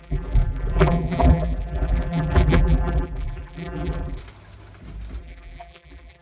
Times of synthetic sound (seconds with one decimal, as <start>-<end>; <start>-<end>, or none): 0.0-4.2; 5.2-6.2